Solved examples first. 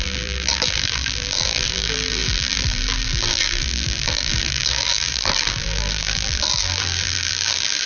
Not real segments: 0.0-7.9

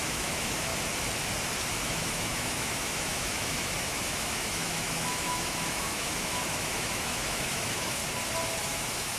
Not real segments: 0.0-0.7; 1.7-8.0; 8.6-9.2